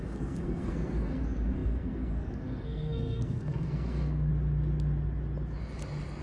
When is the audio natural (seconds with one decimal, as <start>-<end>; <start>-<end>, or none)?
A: 4.3-6.2